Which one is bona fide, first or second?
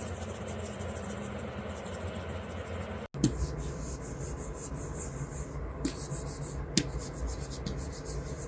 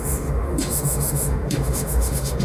first